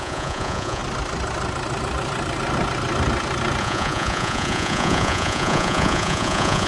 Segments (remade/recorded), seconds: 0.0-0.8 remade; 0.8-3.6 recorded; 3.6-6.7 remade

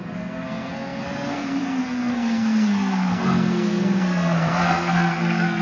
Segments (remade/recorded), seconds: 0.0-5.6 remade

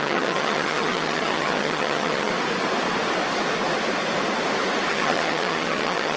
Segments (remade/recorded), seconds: 0.0-2.3 remade; 2.3-4.9 recorded; 4.9-6.2 remade

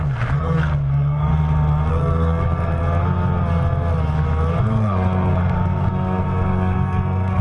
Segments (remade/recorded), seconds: 0.0-1.3 remade; 1.3-1.9 recorded; 1.9-2.8 remade; 2.8-4.6 recorded; 4.6-7.4 remade

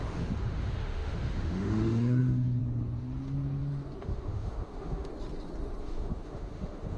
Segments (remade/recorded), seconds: 0.0-2.6 remade; 2.6-4.0 recorded; 4.0-5.1 remade; 5.1-5.8 recorded; 5.8-7.0 remade

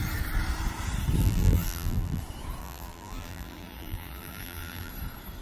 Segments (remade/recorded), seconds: 0.0-1.2 recorded; 1.2-2.2 remade; 2.2-2.6 recorded; 2.6-4.9 remade; 4.9-5.4 recorded

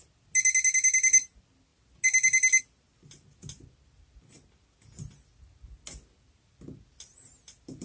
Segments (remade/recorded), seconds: 0.0-7.8 recorded